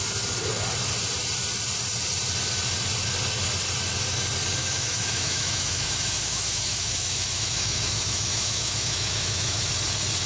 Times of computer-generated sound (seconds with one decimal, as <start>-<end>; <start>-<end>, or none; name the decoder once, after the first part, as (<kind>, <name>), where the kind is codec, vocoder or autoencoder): 4.6-9.7 (autoencoder, DAC-VAE)